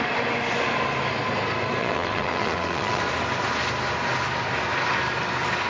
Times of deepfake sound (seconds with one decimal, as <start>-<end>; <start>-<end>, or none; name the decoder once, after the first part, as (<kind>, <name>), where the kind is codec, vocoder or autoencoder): 1.8-3.0 (vocoder, WaveNeXt)